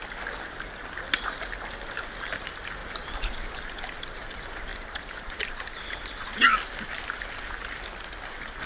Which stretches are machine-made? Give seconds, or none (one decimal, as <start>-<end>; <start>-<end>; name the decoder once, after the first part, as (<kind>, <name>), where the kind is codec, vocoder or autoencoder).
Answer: 2.8-3.6 (vocoder, BigVGAN v2); 4.7-5.8